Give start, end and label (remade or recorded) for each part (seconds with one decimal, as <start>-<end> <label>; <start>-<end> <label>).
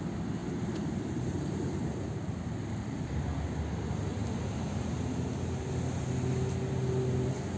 0.0-0.4 recorded; 0.4-3.0 remade; 3.0-7.6 recorded